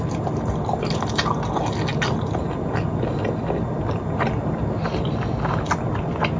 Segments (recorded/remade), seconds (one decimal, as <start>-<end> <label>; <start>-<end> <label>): 0.0-6.4 recorded